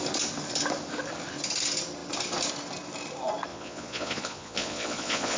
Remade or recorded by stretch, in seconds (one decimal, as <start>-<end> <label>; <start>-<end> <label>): 0.0-3.5 recorded; 3.5-5.4 remade